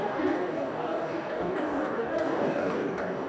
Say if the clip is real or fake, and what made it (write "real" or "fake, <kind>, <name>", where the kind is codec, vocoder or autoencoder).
fake, codec, DAC